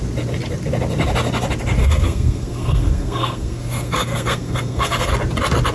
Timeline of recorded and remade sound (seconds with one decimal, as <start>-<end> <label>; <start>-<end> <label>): 0.0-1.8 recorded; 1.8-5.1 remade; 5.1-5.7 recorded